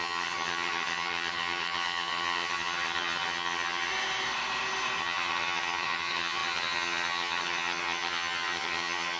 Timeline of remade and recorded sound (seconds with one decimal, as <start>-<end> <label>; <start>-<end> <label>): 0.0-3.9 remade; 3.9-5.0 recorded; 5.0-9.2 remade